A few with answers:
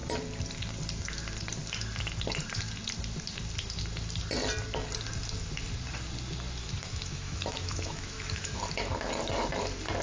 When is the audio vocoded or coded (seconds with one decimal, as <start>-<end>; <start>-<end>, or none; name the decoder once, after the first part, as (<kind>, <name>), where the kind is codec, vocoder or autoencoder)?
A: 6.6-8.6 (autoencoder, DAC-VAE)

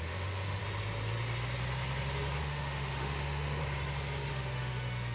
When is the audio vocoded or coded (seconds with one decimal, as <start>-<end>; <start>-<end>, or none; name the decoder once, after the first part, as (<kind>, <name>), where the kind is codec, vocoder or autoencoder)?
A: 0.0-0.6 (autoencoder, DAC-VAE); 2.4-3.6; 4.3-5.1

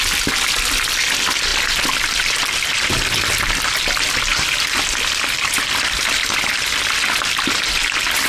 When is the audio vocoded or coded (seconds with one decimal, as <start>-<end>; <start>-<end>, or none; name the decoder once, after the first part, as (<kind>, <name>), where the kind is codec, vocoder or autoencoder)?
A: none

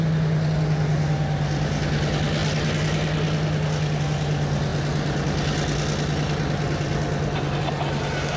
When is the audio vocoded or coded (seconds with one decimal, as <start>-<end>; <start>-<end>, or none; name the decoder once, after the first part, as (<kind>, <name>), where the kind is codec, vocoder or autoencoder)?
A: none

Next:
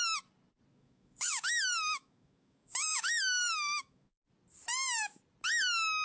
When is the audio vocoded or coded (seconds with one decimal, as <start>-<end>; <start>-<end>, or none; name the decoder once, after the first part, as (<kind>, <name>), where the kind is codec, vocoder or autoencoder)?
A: 0.7-4.2 (autoencoder, DAC-VAE); 4.7-5.2

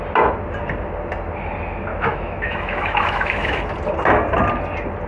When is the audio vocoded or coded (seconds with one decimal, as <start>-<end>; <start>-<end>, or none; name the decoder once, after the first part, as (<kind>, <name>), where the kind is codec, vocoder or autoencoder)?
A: 1.9-3.6 (autoencoder, DAC-VAE)

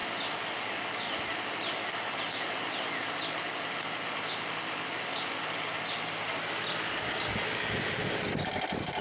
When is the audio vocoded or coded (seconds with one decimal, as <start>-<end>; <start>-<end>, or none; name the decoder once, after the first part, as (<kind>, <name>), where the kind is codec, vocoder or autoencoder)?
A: none

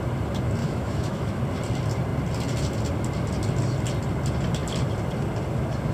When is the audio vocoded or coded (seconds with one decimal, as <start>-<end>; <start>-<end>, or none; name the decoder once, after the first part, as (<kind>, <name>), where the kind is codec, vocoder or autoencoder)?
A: 0.6-1.4 (autoencoder, DAC-VAE)